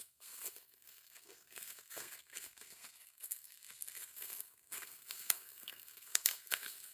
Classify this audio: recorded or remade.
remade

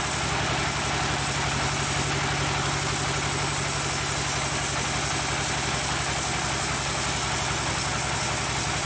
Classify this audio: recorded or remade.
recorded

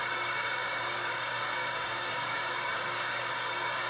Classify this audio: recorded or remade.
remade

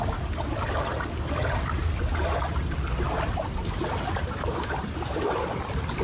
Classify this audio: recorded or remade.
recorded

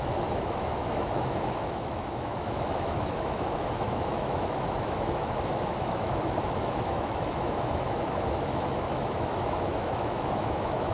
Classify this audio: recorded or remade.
remade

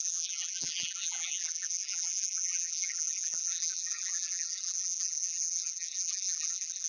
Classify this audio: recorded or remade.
remade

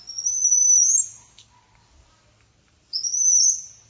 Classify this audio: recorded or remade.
recorded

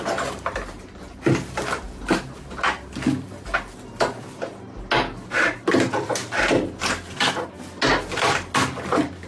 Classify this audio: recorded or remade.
recorded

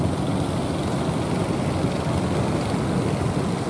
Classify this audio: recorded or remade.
recorded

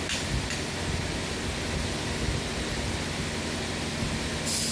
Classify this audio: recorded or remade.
recorded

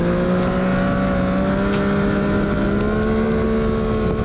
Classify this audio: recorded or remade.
recorded